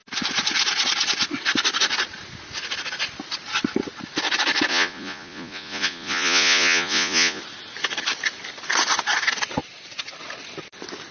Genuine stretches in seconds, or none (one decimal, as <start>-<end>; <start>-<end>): 0.0-4.7; 7.4-11.1